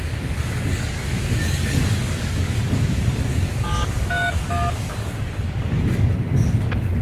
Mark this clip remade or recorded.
remade